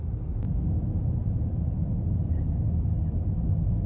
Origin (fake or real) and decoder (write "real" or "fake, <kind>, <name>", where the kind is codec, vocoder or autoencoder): real